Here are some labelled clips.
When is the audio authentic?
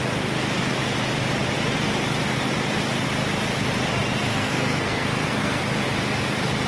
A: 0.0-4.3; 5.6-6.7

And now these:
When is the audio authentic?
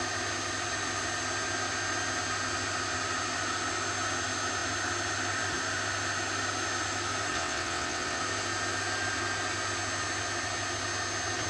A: 0.0-7.3; 8.2-11.5